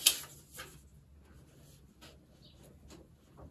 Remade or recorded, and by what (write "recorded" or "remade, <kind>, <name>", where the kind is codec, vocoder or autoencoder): recorded